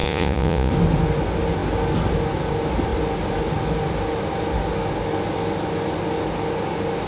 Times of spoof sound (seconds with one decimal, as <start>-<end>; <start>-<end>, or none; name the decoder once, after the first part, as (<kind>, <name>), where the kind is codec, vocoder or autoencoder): 0.0-0.7 (vocoder, Vocos)